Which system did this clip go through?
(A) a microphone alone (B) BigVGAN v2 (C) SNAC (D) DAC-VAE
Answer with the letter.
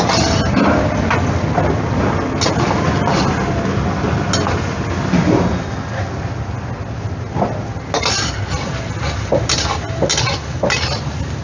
A